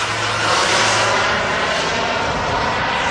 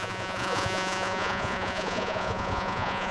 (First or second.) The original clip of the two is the first